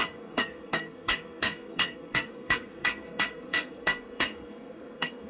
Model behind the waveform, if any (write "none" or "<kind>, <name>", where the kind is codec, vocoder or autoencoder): codec, SNAC